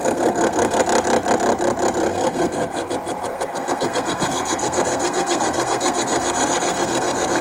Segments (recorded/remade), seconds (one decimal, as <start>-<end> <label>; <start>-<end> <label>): 0.0-0.8 remade; 0.8-2.1 recorded; 2.1-2.9 remade; 2.9-3.3 recorded; 3.3-7.4 remade